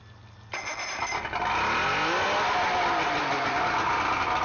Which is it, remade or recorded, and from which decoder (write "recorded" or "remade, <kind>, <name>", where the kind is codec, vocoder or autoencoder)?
recorded